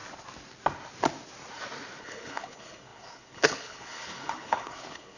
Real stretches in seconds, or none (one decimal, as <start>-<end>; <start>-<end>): 0.0-2.0